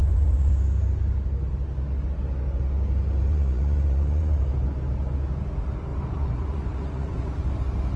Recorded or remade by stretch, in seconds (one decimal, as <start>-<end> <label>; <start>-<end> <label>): 0.0-0.5 remade; 0.5-3.3 recorded; 3.3-4.4 remade; 4.4-5.9 recorded; 5.9-7.5 remade; 7.5-8.0 recorded